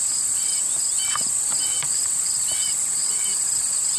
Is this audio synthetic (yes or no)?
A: no